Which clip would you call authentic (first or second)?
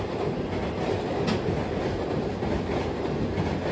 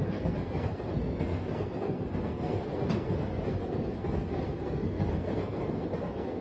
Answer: first